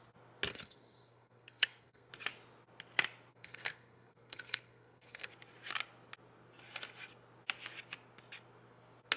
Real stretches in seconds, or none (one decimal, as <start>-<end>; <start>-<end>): 0.0-0.5; 2.1-3.3; 5.3-9.2